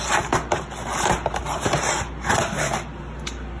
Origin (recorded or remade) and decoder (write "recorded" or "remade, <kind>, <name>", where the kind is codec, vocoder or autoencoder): recorded